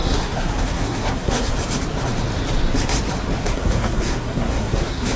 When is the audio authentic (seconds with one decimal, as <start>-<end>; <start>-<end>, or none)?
1.5-3.4